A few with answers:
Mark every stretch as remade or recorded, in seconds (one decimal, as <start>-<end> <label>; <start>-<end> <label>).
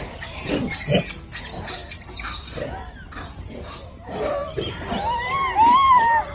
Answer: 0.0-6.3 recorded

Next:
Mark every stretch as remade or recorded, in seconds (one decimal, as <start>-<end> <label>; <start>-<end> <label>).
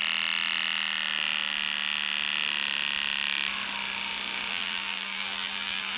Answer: 0.0-4.5 recorded; 4.5-6.0 remade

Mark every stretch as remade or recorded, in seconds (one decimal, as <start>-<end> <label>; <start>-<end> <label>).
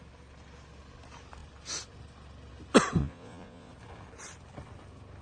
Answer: 0.0-3.0 recorded; 3.0-3.7 remade; 3.7-5.2 recorded